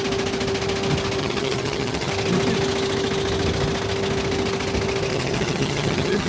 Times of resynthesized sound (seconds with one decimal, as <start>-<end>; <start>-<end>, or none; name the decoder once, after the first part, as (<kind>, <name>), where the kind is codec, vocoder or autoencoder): 1.2-2.1 (vocoder, HiFi-GAN); 5.1-6.3